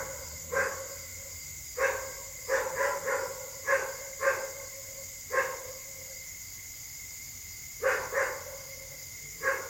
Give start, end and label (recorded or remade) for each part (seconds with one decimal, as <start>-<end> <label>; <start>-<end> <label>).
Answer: 0.0-7.7 recorded; 7.7-8.3 remade; 8.3-9.7 recorded